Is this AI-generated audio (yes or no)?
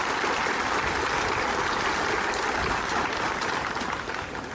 no